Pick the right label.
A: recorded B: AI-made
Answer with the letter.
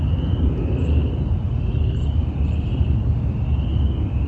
A